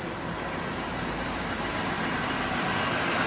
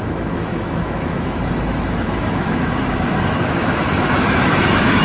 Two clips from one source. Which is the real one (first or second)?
first